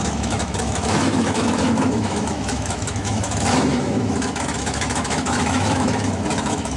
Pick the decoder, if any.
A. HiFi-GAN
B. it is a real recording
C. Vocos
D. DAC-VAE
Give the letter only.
D